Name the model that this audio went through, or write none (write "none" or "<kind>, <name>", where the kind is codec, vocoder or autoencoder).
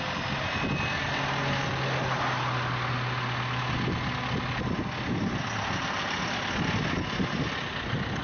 none